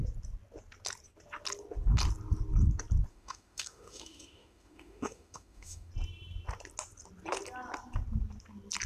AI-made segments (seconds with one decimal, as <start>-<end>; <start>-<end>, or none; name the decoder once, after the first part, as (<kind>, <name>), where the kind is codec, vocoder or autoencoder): 3.1-5.9 (autoencoder, DAC-VAE)